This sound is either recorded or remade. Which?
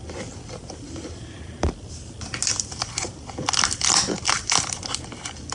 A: recorded